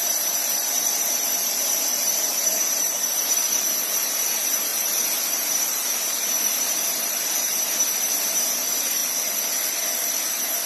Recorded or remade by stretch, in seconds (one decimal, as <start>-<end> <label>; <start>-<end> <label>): 0.0-9.0 remade; 9.0-10.7 recorded